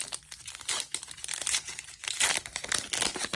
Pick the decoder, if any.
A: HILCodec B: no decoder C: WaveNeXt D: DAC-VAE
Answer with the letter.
B